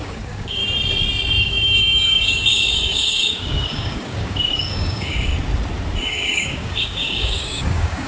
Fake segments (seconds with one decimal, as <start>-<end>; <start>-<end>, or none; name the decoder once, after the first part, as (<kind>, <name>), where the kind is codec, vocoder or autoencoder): 0.0-0.6 (codec, DAC); 1.4-5.3; 6.1-8.1